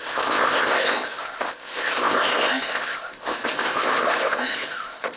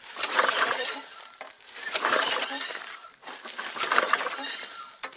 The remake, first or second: first